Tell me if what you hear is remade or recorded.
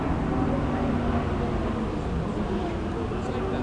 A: recorded